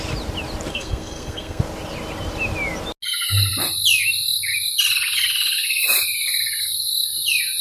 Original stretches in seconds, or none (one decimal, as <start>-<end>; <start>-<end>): 0.0-0.7; 1.6-7.6